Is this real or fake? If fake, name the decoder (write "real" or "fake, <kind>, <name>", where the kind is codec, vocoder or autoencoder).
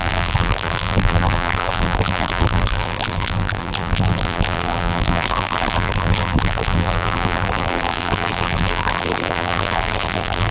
fake, vocoder, BigVGAN v2